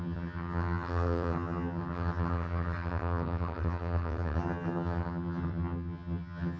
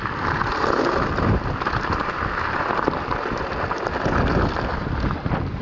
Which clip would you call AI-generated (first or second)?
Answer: first